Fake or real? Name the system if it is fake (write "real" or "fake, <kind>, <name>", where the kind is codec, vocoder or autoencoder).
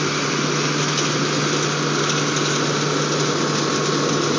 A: real